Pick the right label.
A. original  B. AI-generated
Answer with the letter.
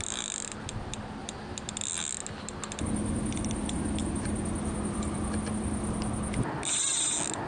A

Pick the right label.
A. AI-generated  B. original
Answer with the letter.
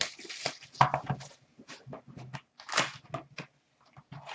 B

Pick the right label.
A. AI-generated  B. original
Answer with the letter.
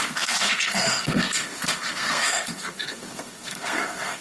A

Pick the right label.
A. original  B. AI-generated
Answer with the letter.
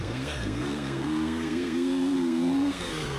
B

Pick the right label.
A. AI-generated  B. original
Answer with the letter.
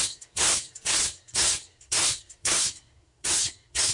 A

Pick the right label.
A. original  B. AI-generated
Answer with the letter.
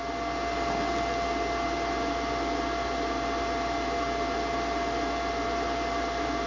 A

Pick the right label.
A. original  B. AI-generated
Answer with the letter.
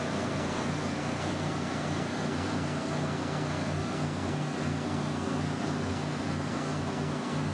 B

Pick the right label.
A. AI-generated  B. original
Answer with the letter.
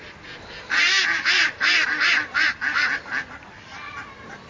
B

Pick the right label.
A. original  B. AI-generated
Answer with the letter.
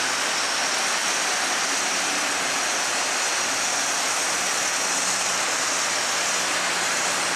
A